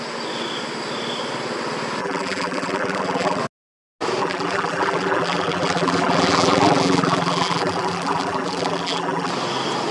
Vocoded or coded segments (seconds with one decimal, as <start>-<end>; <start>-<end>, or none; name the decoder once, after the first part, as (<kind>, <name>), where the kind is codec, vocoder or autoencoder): 2.0-3.4 (vocoder, BigVGAN v2); 4.2-9.3